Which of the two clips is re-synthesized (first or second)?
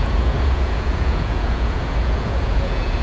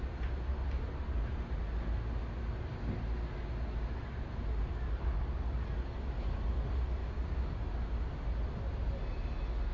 first